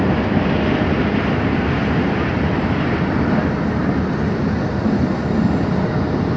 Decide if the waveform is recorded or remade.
recorded